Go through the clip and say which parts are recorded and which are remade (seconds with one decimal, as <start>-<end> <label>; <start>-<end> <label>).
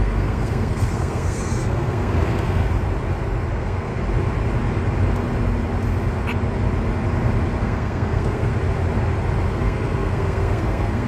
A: 0.0-2.6 remade; 2.6-3.5 recorded; 3.5-3.9 remade; 3.9-7.6 recorded; 7.6-8.5 remade; 8.5-9.5 recorded; 9.5-11.1 remade